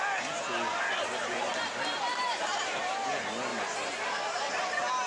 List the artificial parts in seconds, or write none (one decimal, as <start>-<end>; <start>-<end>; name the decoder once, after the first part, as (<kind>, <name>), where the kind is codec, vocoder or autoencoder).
0.9-2.8 (vocoder, BigVGAN v2); 3.5-4.5